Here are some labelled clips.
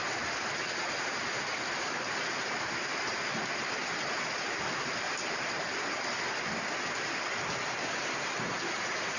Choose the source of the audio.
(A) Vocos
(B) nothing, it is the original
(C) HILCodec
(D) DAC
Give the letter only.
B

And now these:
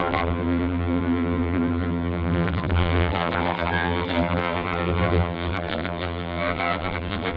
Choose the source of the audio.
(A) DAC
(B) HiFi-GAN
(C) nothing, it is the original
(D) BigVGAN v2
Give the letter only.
D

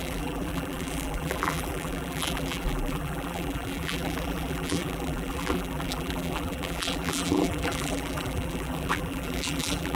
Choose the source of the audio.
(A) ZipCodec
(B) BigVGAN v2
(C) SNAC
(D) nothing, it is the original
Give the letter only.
B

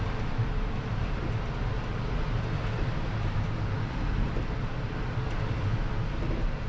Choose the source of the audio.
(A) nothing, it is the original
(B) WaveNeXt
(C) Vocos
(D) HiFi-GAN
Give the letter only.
A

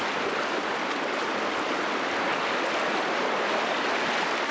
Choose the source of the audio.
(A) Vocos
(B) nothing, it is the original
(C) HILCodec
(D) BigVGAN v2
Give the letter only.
B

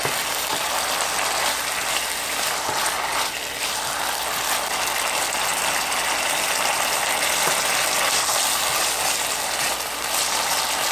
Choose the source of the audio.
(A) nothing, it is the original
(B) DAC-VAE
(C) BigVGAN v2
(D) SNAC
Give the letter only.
A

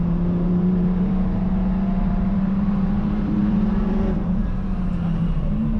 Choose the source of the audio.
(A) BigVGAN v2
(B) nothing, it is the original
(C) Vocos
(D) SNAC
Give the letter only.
A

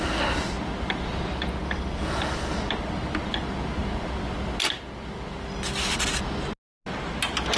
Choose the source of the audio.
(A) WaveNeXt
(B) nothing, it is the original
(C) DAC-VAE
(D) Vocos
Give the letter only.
B